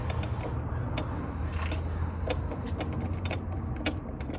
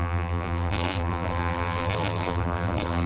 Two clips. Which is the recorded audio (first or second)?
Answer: first